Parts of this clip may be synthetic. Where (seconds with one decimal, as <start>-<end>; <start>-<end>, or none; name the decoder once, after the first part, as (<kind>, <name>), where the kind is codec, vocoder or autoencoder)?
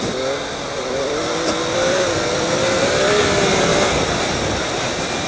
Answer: 1.2-3.2 (vocoder, BigVGAN v2); 3.7-4.3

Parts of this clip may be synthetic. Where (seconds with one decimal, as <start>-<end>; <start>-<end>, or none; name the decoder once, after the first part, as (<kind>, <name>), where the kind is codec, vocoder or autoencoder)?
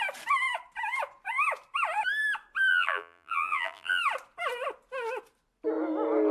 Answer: 2.7-4.0 (vocoder, BigVGAN v2)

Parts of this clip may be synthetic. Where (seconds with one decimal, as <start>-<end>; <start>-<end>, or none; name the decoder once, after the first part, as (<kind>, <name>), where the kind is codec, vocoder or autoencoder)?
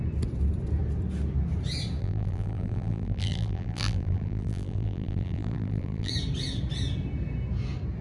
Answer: 2.0-6.1 (vocoder, BigVGAN v2)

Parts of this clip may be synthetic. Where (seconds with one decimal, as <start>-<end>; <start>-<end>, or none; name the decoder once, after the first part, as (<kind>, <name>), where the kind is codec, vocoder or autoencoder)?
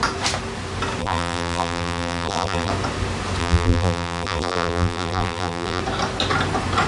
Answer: 1.0-2.7 (vocoder, BigVGAN v2); 3.4-5.8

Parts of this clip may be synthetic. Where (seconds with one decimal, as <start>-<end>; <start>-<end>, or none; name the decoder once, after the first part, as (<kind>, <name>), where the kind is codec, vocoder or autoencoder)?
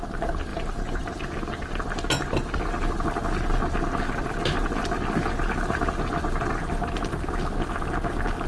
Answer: 0.5-1.2 (vocoder, BigVGAN v2)